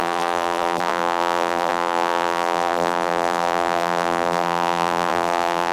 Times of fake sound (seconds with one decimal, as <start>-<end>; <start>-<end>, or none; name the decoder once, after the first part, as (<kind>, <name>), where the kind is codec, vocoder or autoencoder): 0.0-5.7 (vocoder, BigVGAN v2)